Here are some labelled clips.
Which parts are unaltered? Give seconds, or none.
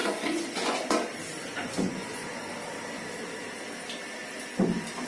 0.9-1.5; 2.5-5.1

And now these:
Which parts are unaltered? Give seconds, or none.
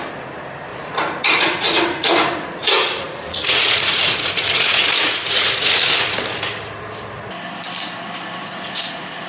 0.0-0.7; 5.7-8.4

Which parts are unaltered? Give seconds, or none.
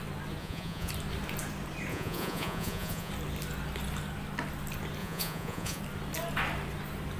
0.0-0.4; 0.9-1.9; 3.1-5.0; 5.8-7.2